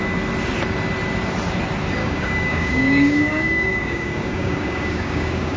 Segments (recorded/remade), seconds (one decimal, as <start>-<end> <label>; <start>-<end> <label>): 0.0-2.0 recorded; 2.0-5.6 remade